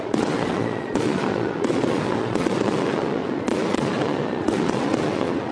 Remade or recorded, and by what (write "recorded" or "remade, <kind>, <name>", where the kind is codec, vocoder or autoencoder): remade, vocoder, Vocos